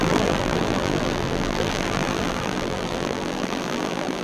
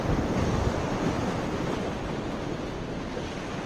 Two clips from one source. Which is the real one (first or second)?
second